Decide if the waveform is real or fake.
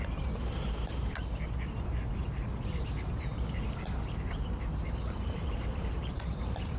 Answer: fake